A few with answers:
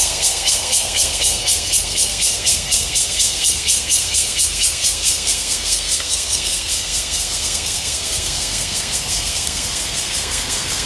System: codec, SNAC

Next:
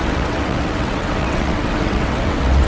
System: vocoder, WaveNeXt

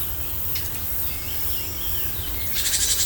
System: none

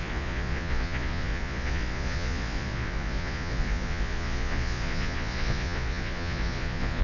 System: vocoder, Vocos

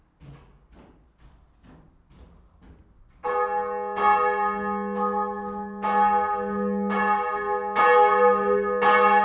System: none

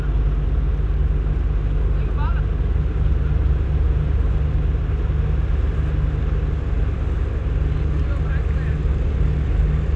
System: none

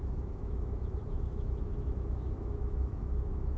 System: autoencoder, DAC-VAE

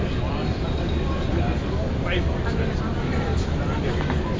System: none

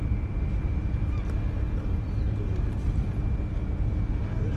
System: none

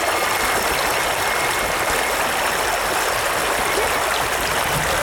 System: none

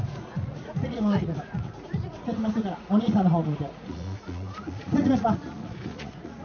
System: vocoder, Vocos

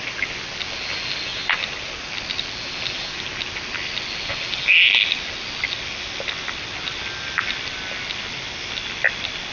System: none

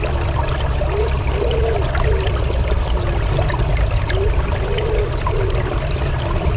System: none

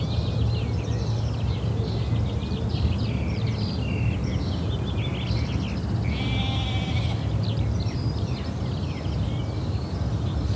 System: none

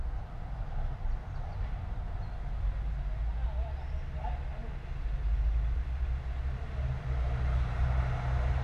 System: none